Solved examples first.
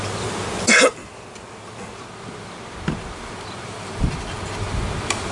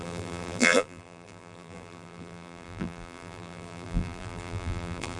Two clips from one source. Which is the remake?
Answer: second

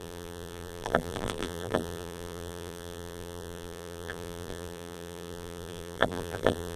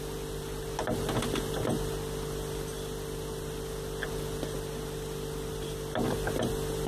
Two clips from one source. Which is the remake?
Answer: first